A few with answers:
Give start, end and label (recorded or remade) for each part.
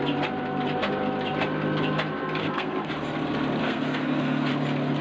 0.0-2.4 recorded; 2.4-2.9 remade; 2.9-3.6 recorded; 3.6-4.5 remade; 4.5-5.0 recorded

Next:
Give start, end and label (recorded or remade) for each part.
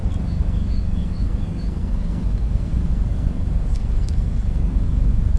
0.0-5.4 remade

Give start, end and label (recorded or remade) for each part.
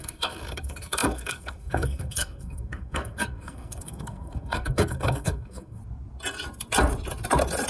0.0-5.8 remade; 5.8-7.7 recorded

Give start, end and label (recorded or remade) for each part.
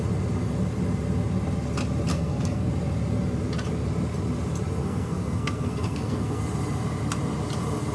0.0-2.1 recorded; 2.1-2.7 remade; 2.7-4.8 recorded; 4.8-6.4 remade; 6.4-7.9 recorded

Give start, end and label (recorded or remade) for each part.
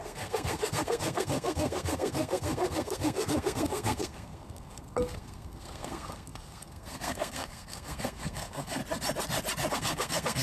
0.0-8.8 remade; 8.8-9.7 recorded; 9.7-10.4 remade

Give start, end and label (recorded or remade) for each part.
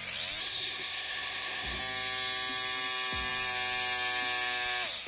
0.0-0.4 recorded; 0.4-1.8 remade; 1.8-5.1 recorded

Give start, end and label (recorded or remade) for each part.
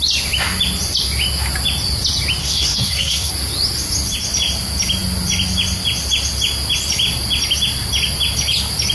0.0-2.4 recorded; 2.4-3.3 remade; 3.3-8.9 recorded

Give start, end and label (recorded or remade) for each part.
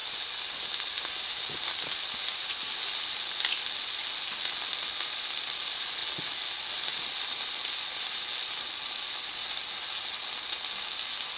0.0-11.4 recorded